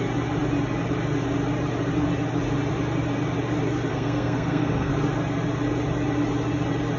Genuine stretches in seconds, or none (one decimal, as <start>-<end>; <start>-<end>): 0.0-3.9; 4.9-7.0